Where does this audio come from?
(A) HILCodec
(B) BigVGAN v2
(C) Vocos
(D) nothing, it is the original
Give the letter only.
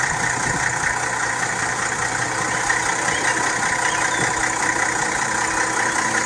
D